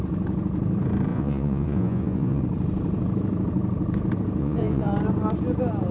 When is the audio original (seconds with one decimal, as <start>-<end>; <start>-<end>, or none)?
0.0-1.1; 2.4-4.4; 4.9-5.9